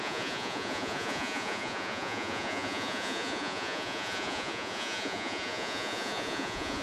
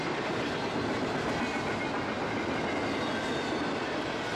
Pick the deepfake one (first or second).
first